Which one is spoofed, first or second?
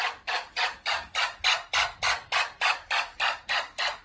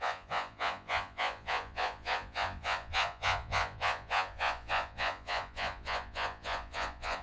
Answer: second